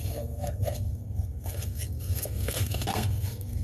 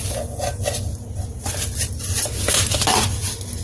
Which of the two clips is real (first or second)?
second